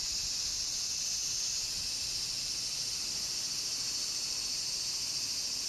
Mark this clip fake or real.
real